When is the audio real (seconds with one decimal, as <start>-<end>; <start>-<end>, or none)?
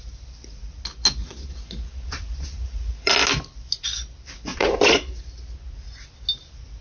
0.0-1.2; 3.1-4.5; 5.1-6.8